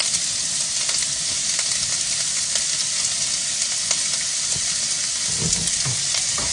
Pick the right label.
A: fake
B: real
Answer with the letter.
B